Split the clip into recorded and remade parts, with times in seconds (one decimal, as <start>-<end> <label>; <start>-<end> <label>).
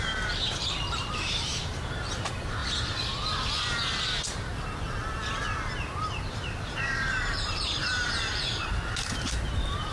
0.0-2.6 remade; 2.6-6.3 recorded; 6.3-9.9 remade